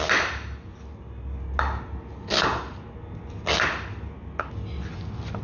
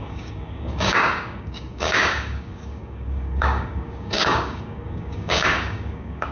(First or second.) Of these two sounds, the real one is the first